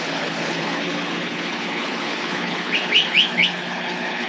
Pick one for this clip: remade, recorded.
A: remade